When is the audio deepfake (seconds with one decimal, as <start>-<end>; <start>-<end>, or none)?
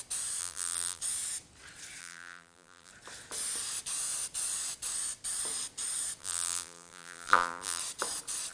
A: 0.4-1.0; 2.0-2.9; 6.2-7.8